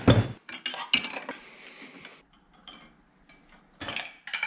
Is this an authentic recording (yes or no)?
yes